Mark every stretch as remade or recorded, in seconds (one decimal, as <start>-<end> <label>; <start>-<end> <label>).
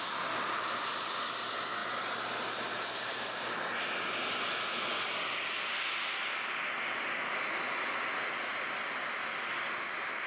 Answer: 0.0-10.3 recorded